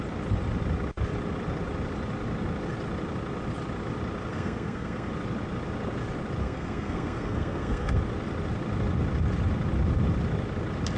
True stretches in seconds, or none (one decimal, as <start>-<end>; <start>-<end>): 0.0-4.3; 5.1-6.4; 8.0-11.0